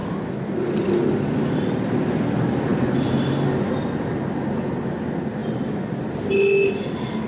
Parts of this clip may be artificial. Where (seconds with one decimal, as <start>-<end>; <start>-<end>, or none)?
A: none

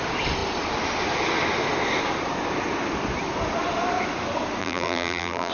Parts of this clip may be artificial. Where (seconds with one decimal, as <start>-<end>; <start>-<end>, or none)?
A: 4.6-5.5

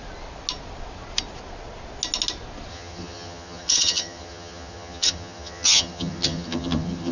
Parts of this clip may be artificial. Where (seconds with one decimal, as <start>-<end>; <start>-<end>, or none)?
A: 2.7-7.1

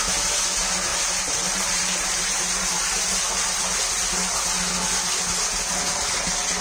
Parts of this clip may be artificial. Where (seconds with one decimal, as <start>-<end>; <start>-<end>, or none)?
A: 0.9-3.6

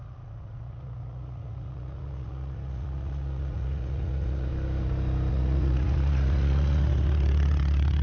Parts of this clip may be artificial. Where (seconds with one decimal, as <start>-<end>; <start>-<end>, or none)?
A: 0.0-4.5; 5.3-8.0

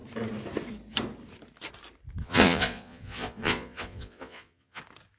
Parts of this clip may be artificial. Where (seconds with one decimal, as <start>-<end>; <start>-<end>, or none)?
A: 2.2-4.8

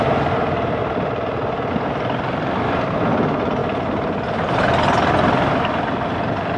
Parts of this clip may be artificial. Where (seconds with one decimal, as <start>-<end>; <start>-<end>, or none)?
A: 0.0-6.6

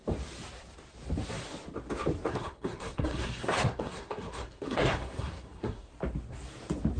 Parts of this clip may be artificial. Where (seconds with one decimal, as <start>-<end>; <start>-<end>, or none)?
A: 2.3-5.9